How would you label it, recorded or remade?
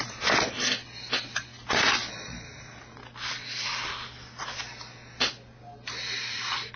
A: recorded